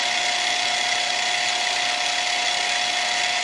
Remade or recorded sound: recorded